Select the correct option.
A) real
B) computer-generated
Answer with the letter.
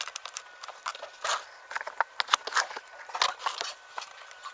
A